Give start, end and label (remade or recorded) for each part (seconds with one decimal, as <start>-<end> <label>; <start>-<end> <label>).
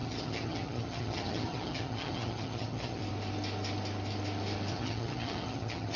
0.0-3.0 remade; 3.0-4.7 recorded; 4.7-6.0 remade